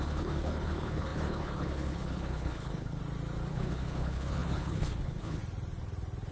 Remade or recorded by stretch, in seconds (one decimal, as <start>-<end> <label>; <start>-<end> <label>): 0.0-3.0 remade; 3.0-3.5 recorded; 3.5-5.4 remade; 5.4-6.3 recorded